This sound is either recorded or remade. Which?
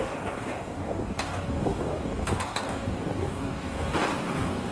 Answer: remade